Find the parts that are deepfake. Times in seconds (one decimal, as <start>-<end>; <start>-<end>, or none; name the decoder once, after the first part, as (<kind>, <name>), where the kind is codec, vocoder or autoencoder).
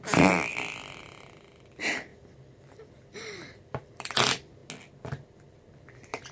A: 0.0-4.6 (vocoder, BigVGAN v2); 5.5-6.3